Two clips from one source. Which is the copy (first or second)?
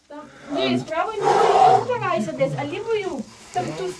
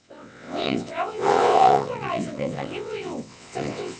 second